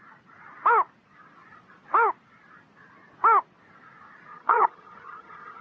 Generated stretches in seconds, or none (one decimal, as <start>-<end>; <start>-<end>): 4.3-5.6